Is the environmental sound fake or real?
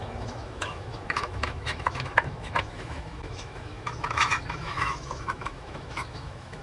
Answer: fake